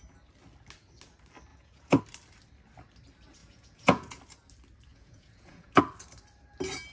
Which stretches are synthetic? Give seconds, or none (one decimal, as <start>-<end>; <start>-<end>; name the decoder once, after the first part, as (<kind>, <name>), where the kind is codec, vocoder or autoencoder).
1.5-2.0 (vocoder, Vocos); 3.4-4.2; 4.9-5.8